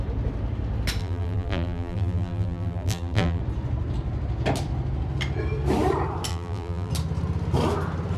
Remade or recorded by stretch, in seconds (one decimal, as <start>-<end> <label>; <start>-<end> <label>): 0.0-1.0 recorded; 1.0-3.4 remade; 3.4-6.3 recorded; 6.3-6.9 remade; 6.9-8.2 recorded